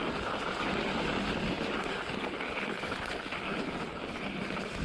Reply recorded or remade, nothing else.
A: recorded